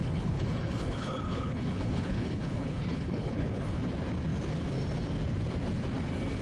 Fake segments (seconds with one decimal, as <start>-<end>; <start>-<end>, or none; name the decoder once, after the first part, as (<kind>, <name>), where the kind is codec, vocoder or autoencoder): 0.0-3.8 (codec, HILCodec)